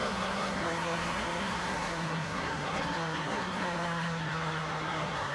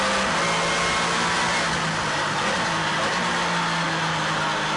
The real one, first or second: second